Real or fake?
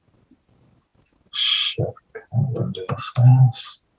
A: real